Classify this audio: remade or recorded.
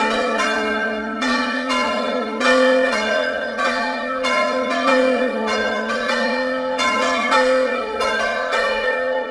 remade